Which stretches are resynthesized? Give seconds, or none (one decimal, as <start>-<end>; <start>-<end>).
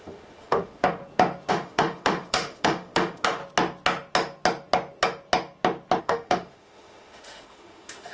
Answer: 0.0-1.0; 1.5-3.4; 6.0-8.1